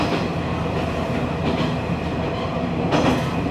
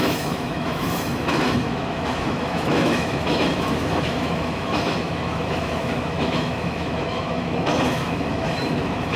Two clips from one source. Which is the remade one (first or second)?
second